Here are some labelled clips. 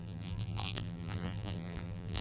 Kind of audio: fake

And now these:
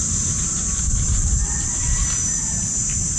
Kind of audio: real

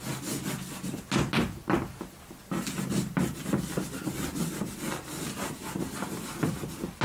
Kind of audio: real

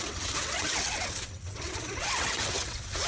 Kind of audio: fake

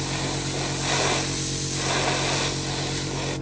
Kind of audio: real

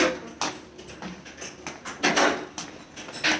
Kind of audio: real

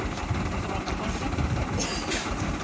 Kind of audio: real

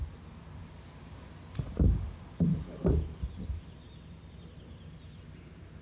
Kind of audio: real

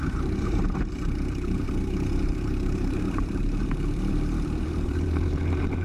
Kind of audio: fake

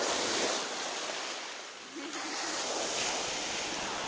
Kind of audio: real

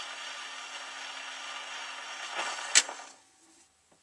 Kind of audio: real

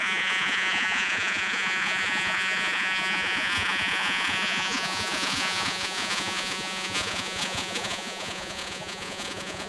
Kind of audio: fake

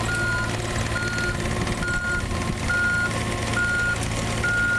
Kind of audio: real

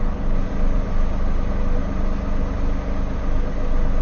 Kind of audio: real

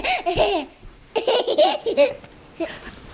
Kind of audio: real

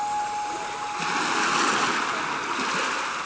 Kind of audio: real